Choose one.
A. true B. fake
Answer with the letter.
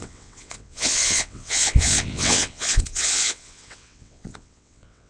B